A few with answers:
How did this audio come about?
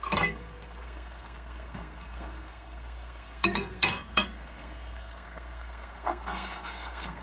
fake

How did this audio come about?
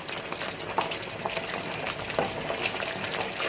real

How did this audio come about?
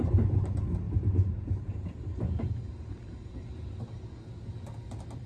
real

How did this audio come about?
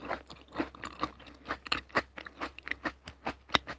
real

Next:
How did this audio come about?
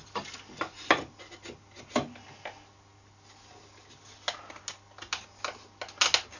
real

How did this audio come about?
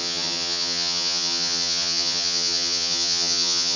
fake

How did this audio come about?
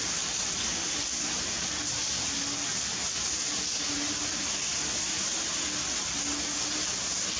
real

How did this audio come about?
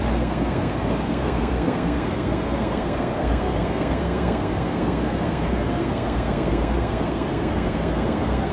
fake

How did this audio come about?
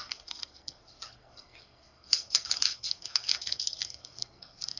fake